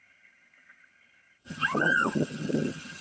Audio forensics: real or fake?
fake